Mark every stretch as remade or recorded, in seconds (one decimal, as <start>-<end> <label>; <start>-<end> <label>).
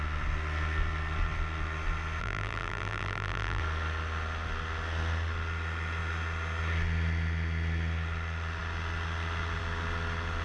0.0-2.2 recorded; 2.2-3.6 remade; 3.6-10.4 recorded